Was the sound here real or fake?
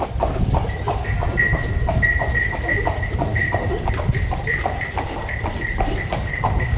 real